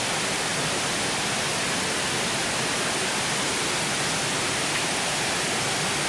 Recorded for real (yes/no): yes